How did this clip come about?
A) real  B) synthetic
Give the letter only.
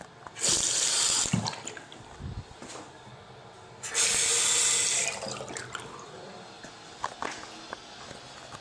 A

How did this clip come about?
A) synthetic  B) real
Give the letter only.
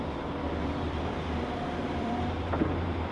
A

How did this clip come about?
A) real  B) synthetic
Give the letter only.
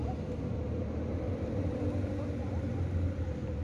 A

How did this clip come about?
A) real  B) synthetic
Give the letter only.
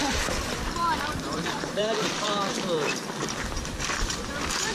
B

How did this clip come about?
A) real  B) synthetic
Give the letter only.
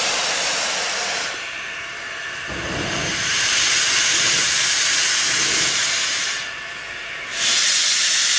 B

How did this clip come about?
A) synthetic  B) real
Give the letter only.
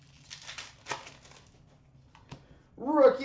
B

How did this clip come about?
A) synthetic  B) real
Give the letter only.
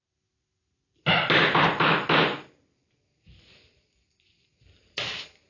B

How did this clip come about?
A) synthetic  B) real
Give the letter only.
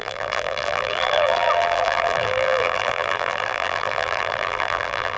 A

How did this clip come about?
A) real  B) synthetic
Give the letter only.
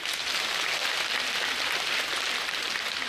A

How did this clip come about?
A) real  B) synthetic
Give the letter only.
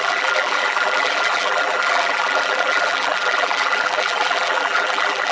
B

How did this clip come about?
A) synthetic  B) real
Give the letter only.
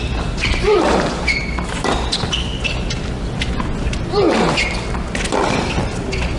B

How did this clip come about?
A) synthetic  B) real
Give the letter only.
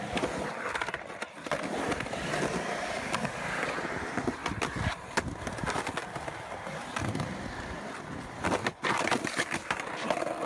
B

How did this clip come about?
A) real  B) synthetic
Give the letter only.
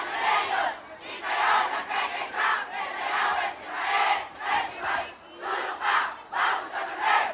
B